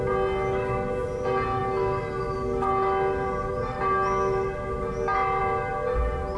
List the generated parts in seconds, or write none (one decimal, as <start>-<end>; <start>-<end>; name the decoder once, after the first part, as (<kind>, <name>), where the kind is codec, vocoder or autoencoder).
none